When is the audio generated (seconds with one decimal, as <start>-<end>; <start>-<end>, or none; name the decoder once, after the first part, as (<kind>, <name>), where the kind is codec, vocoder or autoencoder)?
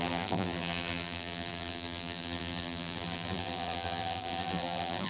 0.0-5.1 (vocoder, BigVGAN v2)